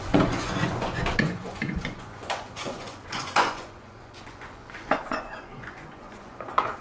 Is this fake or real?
fake